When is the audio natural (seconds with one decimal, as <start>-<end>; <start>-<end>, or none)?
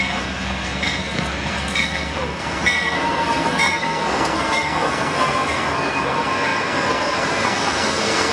none